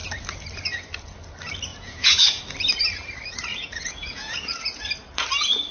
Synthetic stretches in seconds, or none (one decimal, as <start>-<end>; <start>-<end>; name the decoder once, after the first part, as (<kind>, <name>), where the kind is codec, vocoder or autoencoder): 1.7-2.4 (vocoder, Vocos); 3.5-4.8

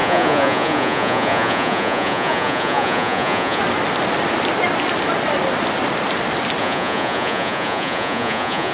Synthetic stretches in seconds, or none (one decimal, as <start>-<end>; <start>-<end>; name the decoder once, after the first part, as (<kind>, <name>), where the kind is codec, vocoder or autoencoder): 0.0-3.6 (vocoder, Vocos); 6.6-8.7